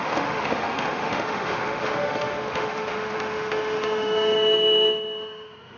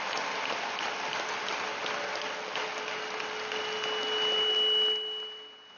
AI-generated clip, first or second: first